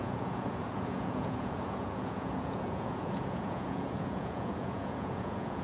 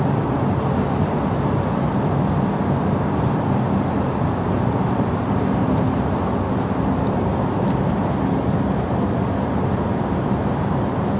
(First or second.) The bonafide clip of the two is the second